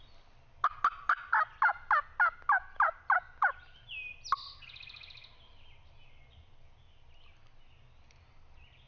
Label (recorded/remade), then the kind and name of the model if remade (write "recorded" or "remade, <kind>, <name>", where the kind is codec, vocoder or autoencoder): recorded